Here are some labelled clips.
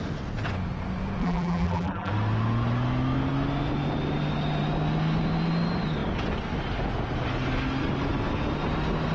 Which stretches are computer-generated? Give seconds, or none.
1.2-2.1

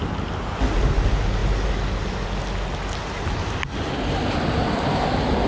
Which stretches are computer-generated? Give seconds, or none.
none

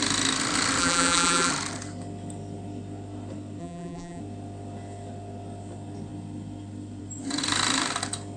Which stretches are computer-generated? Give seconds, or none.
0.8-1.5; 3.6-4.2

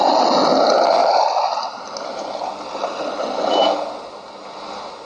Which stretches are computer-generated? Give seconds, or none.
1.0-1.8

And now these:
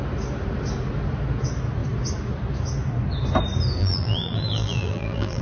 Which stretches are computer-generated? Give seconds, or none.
3.8-5.4

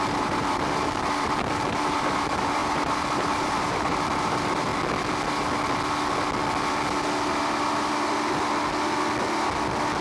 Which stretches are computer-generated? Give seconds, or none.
0.0-4.7